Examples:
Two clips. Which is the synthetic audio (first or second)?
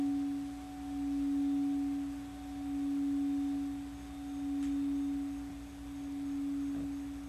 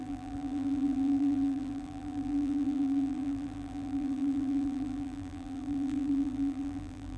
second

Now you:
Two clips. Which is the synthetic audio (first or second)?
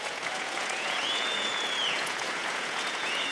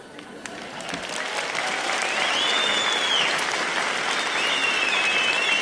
first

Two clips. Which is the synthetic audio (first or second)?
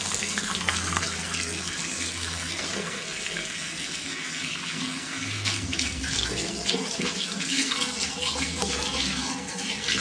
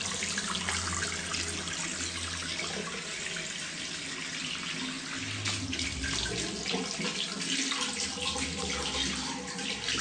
first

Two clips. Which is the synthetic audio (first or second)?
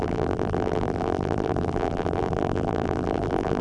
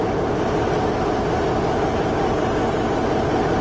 first